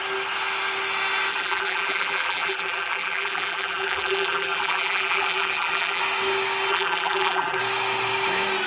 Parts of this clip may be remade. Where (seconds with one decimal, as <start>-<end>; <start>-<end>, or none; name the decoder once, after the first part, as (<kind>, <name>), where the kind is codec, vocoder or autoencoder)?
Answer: 1.3-6.0 (vocoder, BigVGAN v2); 6.7-7.6